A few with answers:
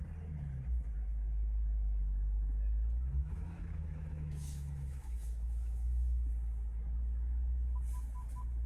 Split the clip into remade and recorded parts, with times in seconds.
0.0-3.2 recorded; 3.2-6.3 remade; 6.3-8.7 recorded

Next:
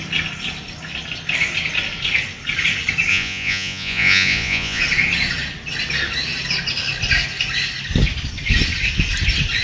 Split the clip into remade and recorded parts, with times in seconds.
0.0-3.1 recorded; 3.1-4.8 remade; 4.8-9.6 recorded